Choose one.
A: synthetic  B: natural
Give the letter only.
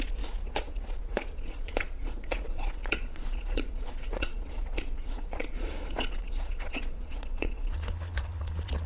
A